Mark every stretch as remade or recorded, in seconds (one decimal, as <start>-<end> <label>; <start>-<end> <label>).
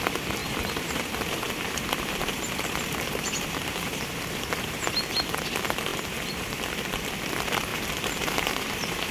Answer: 0.0-0.4 recorded; 0.4-4.9 remade; 4.9-5.9 recorded; 5.9-6.6 remade; 6.6-7.7 recorded; 7.7-9.1 remade